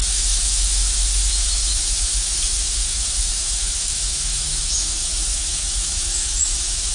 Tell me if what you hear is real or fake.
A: fake